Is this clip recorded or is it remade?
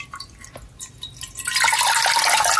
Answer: recorded